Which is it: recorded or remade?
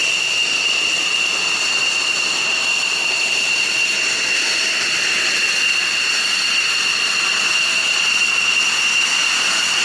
recorded